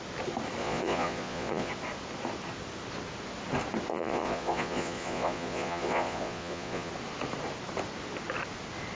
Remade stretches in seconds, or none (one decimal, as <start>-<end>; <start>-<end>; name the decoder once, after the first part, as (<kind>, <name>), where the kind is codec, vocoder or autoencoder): 0.6-1.7 (vocoder, Vocos); 3.9-6.9